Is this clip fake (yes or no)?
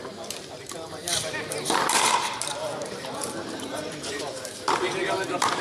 yes